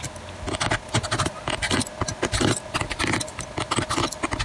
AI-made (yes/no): no